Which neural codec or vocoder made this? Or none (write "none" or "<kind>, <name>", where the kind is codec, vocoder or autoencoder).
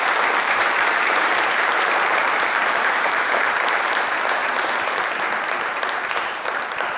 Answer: vocoder, BigVGAN v2